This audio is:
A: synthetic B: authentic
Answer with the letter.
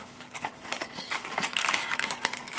A